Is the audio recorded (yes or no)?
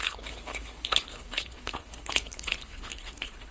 no